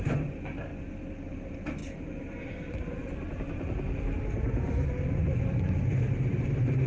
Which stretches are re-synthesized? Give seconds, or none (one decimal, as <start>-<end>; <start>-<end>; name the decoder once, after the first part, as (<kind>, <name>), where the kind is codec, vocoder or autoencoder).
0.0-0.7 (vocoder, BigVGAN v2); 1.3-6.9